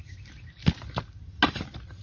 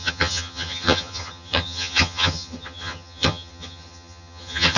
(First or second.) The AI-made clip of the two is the second